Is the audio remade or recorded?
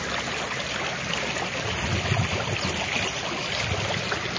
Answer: recorded